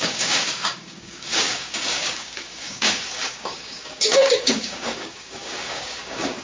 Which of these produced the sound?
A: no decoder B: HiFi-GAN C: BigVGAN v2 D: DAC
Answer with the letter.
D